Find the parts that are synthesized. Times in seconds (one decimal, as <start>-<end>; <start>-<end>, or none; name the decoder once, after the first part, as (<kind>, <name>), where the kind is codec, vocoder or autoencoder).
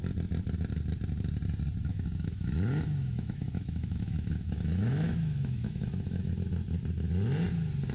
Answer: 1.9-6.3 (autoencoder, DAC-VAE)